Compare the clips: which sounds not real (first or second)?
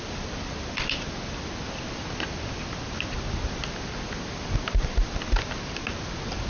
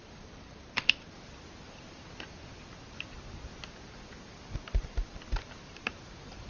second